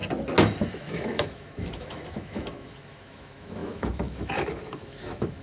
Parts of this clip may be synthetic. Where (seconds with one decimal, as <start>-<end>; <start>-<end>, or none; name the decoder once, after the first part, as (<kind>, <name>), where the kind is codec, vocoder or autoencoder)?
0.7-5.4 (autoencoder, DAC-VAE)